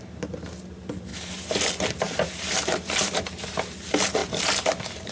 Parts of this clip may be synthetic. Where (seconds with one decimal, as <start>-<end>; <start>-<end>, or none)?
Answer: 1.1-3.2; 4.2-5.1